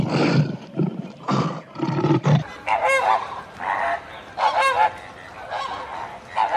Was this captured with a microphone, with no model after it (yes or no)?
yes